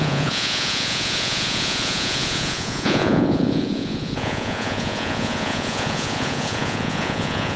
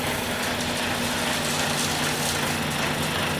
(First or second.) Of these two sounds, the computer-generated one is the first